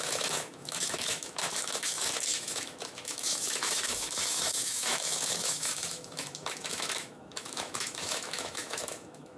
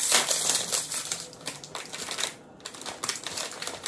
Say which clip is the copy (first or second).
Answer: first